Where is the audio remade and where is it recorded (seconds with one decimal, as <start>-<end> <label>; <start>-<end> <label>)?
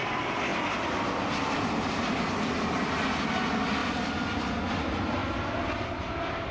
0.0-6.5 recorded